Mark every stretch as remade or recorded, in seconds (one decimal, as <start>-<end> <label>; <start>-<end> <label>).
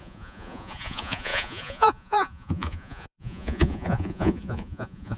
0.0-5.2 remade